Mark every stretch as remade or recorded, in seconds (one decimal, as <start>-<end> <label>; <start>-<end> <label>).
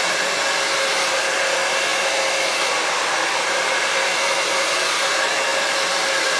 0.0-6.4 recorded